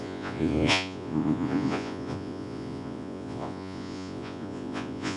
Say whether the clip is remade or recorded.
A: remade